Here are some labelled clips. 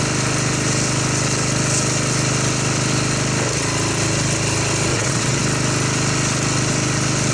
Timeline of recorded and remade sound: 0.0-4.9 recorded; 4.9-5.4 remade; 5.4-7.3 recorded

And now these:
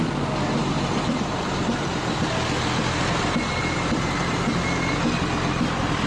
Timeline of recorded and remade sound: 0.0-1.9 remade; 1.9-3.6 recorded; 3.6-6.1 remade

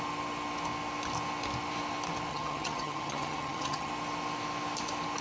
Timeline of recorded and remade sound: 0.0-2.3 recorded; 2.3-3.9 remade; 3.9-5.2 recorded

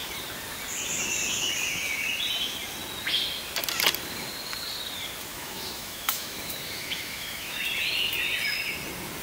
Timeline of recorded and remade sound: 0.0-5.3 recorded; 5.3-7.6 remade; 7.6-9.2 recorded

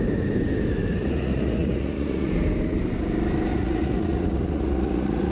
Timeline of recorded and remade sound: 0.0-1.0 recorded; 1.0-2.3 remade; 2.3-3.5 recorded; 3.5-5.3 remade

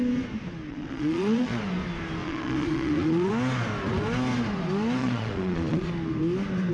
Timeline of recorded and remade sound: 0.0-0.7 recorded; 0.7-1.6 remade; 1.6-2.2 recorded; 2.2-3.3 remade; 3.3-5.0 recorded; 5.0-5.9 remade; 5.9-6.7 recorded